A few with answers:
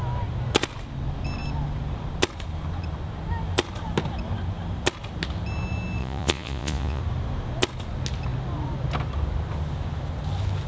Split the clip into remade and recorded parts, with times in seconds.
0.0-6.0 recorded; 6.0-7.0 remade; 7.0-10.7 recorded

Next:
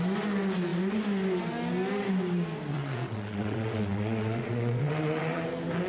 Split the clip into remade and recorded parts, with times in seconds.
0.0-2.7 recorded; 2.7-5.4 remade; 5.4-5.9 recorded

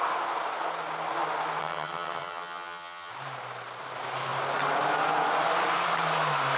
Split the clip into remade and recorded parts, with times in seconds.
0.0-1.6 recorded; 1.6-3.1 remade; 3.1-6.6 recorded

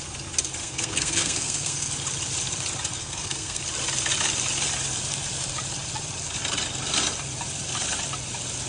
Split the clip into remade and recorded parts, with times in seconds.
0.0-0.6 recorded; 0.6-1.9 remade; 1.9-3.0 recorded; 3.0-3.6 remade; 3.6-8.7 recorded

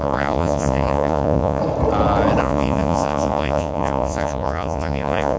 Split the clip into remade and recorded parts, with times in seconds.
0.0-1.6 remade; 1.6-2.4 recorded; 2.4-5.4 remade